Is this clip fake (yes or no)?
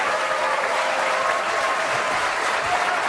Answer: no